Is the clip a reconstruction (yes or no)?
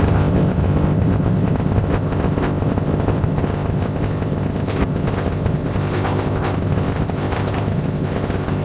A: yes